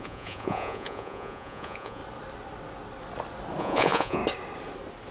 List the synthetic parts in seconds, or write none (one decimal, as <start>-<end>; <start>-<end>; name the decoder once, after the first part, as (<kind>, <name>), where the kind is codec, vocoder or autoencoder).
0.0-2.0 (vocoder, Vocos); 3.6-4.2